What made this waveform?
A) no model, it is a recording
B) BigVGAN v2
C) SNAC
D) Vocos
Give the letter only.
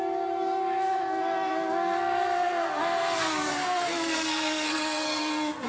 C